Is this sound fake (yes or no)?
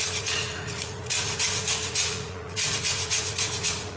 yes